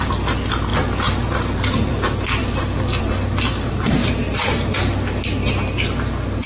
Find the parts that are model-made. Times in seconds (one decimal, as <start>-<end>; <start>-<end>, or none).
0.7-1.9; 4.0-4.7